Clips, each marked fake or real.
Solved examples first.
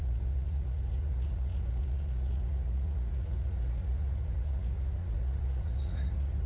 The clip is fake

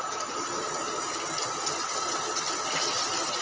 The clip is real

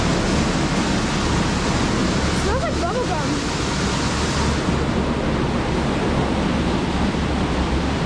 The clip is real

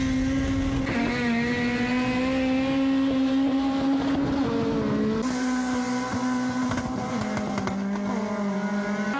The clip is real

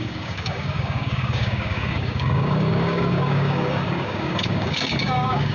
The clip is fake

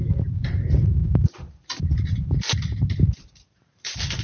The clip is fake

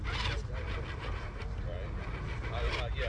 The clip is real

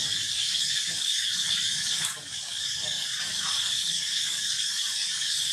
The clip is fake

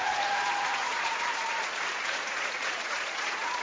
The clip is fake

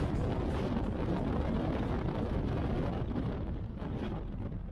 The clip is real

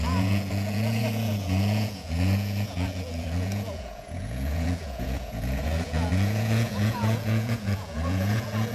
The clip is fake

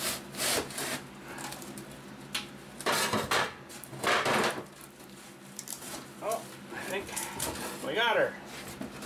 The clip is real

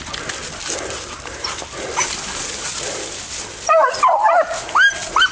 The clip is real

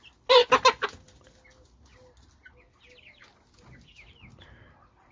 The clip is real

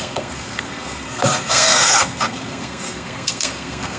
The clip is fake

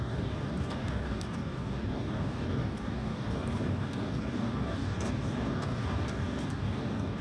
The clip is fake